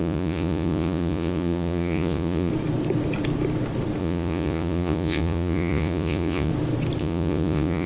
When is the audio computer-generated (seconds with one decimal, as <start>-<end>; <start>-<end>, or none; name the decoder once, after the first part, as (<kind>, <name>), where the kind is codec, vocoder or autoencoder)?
0.0-2.5 (vocoder, Vocos); 4.0-6.5; 7.0-7.9